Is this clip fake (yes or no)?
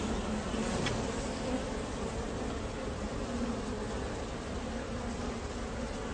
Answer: no